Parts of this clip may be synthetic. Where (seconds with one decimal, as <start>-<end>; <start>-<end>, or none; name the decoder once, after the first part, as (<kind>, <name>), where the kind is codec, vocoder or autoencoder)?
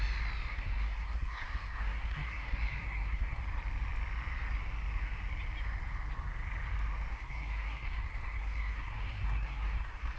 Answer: 0.5-3.4 (codec, SNAC); 7.1-10.2